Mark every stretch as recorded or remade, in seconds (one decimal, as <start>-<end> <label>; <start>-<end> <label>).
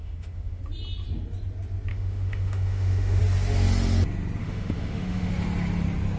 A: 0.0-0.6 remade; 0.6-1.9 recorded; 1.9-3.2 remade; 3.2-4.4 recorded; 4.4-5.3 remade; 5.3-6.2 recorded